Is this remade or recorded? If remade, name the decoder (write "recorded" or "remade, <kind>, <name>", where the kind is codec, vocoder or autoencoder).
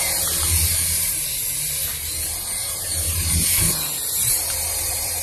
remade, vocoder, BigVGAN v2